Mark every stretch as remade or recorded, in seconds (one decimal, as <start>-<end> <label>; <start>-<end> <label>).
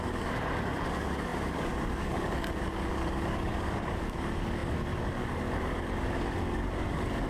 0.0-7.3 remade